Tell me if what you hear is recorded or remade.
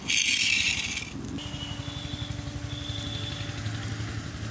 recorded